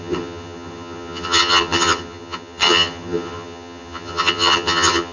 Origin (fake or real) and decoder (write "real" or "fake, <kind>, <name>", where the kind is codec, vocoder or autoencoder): fake, vocoder, HiFi-GAN